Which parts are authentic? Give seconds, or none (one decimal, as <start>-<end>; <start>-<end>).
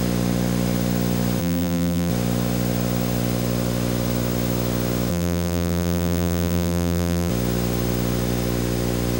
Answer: 0.0-1.4; 2.1-5.1; 7.3-9.2